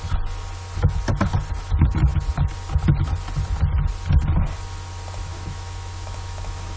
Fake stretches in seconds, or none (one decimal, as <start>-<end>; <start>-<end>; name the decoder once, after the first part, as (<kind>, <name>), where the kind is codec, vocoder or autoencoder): 5.3-6.8 (autoencoder, DAC-VAE)